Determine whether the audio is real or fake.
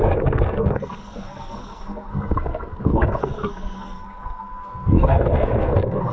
fake